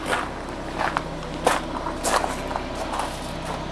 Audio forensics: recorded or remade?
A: recorded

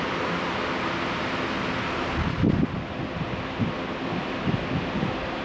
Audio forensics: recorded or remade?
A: recorded